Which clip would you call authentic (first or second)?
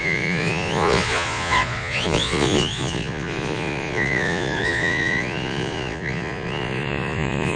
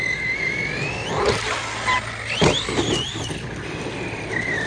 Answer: second